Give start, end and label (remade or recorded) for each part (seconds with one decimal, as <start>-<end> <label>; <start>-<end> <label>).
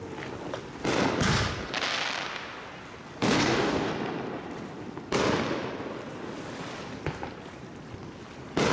0.0-3.2 recorded; 3.2-3.9 remade; 3.9-8.7 recorded